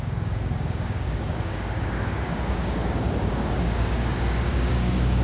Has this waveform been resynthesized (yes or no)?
yes